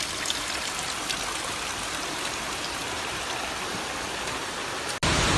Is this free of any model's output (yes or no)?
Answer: yes